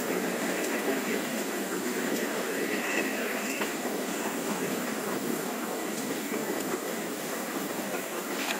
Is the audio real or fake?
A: fake